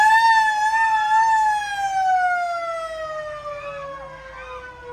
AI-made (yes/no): no